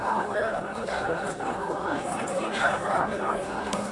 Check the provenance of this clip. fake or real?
fake